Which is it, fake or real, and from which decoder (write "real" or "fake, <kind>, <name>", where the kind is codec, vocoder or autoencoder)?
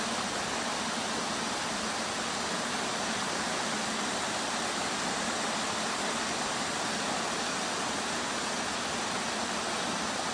real